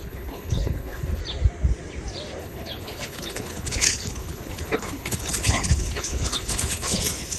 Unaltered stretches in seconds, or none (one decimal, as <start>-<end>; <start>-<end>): 1.2-2.4